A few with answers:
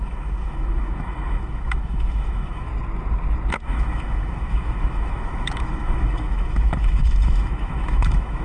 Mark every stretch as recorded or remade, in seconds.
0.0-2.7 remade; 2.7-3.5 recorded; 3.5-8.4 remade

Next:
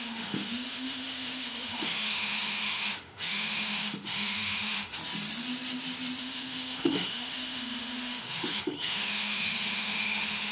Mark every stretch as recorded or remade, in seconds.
0.0-5.0 remade; 5.0-6.2 recorded; 6.2-10.5 remade